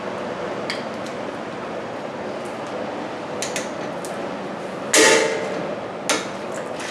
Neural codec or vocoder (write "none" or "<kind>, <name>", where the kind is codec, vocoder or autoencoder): none